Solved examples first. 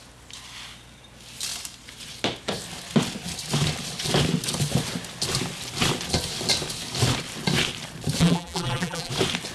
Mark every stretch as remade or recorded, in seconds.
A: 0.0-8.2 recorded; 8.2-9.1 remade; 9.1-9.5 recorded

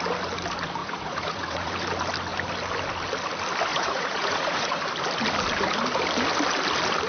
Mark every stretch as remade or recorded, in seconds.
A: 0.0-0.8 recorded; 0.8-1.7 remade; 1.7-3.7 recorded; 3.7-4.8 remade; 4.8-7.1 recorded

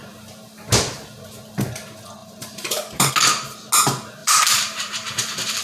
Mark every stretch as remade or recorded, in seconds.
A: 0.0-2.2 recorded; 2.2-3.1 remade; 3.1-4.2 recorded; 4.2-5.6 remade

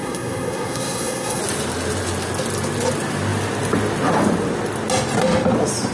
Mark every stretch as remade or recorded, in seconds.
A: 0.0-1.4 remade; 1.4-5.9 recorded

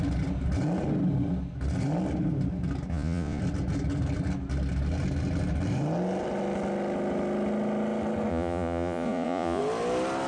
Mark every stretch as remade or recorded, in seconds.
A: 0.0-2.9 recorded; 2.9-3.4 remade; 3.4-8.3 recorded; 8.3-9.6 remade; 9.6-10.3 recorded